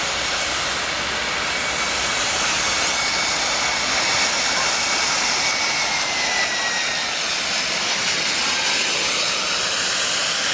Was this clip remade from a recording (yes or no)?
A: no